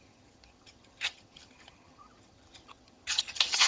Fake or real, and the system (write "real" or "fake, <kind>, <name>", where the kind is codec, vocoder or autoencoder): fake, vocoder, HiFi-GAN